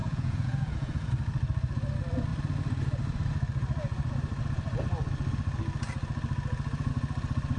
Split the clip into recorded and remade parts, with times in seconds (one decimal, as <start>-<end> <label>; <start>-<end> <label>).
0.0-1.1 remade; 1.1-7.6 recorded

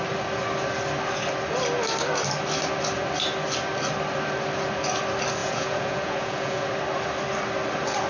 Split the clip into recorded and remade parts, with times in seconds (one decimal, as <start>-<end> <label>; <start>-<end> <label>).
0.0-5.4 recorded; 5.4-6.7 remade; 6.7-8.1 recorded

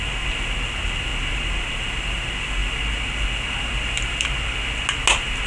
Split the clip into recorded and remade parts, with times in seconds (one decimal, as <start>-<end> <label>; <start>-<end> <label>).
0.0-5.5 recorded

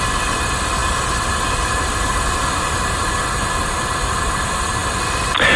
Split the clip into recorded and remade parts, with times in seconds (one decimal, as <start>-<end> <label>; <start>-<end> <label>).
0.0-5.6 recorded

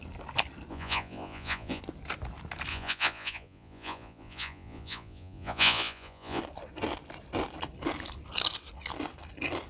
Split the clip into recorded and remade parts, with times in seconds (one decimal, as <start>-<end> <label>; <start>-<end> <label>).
0.0-0.7 recorded; 0.7-1.8 remade; 1.8-2.7 recorded; 2.7-6.4 remade; 6.4-9.7 recorded